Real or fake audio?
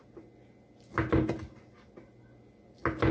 real